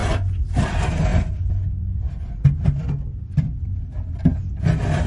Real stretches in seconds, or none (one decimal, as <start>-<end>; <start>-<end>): 0.0-5.1